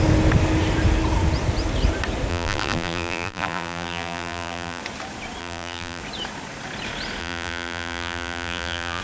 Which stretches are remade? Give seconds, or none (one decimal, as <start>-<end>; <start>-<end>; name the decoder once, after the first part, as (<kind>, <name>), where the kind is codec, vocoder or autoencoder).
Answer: 2.3-4.8 (vocoder, BigVGAN v2); 5.4-6.0; 7.2-9.0